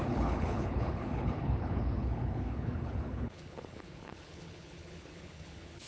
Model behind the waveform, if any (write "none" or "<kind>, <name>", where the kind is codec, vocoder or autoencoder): codec, HILCodec